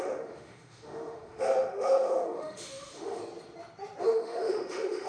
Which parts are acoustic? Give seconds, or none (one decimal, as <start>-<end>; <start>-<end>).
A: 3.2-4.0